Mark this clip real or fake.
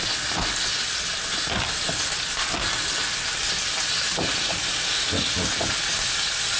real